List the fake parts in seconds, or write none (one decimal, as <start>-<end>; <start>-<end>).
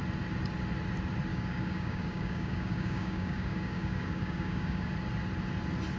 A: 1.3-4.9